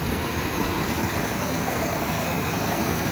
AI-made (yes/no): yes